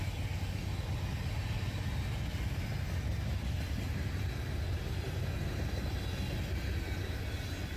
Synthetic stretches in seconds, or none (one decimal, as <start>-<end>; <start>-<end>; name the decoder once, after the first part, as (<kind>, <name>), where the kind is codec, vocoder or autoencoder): 3.1-6.0 (vocoder, BigVGAN v2)